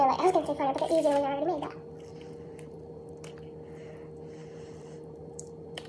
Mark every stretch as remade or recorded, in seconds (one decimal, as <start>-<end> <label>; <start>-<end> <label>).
0.0-2.1 recorded; 2.1-3.1 remade; 3.1-4.4 recorded; 4.4-5.9 remade